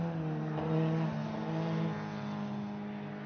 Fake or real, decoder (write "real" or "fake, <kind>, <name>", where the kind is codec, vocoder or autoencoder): real